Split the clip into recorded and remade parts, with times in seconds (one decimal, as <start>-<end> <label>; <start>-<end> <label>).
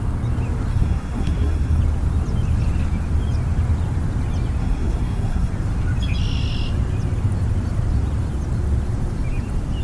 0.0-0.7 recorded; 0.7-1.8 remade; 1.8-4.6 recorded; 4.6-5.5 remade; 5.5-9.8 recorded